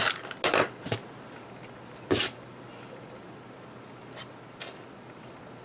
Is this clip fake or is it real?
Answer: real